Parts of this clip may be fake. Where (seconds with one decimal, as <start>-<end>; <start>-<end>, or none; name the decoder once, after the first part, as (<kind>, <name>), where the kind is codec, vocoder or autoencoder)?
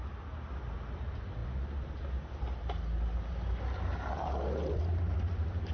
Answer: none